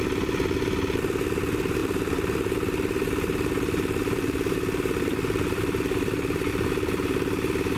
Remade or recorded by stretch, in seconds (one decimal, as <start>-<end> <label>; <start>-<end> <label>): 0.0-1.8 recorded; 1.8-6.5 remade; 6.5-7.8 recorded